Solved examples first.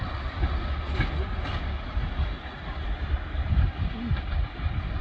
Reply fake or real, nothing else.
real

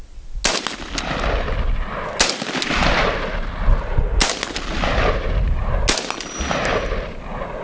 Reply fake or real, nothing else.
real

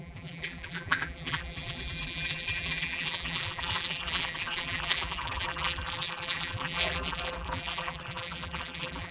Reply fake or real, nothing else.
fake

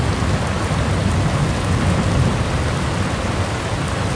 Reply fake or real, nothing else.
real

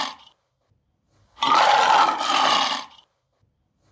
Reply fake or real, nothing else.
real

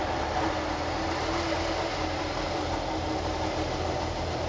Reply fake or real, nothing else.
real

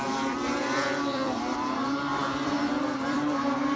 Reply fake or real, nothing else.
fake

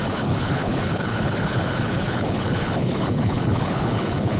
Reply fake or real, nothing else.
fake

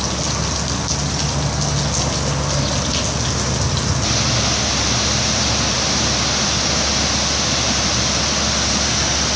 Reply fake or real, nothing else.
real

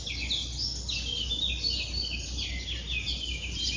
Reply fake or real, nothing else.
real